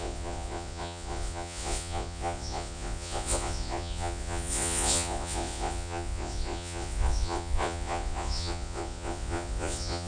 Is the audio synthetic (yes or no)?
yes